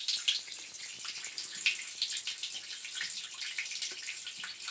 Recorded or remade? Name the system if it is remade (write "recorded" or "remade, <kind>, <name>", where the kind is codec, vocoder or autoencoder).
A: recorded